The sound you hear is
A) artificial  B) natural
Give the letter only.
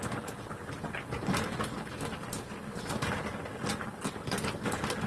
B